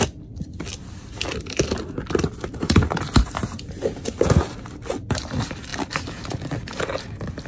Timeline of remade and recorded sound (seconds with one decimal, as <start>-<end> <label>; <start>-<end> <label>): 0.0-7.5 recorded